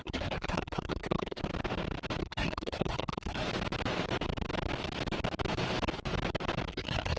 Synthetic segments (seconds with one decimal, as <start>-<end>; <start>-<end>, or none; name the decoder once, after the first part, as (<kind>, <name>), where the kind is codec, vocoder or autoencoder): 0.0-1.4 (codec, SNAC); 2.2-3.4; 6.7-7.2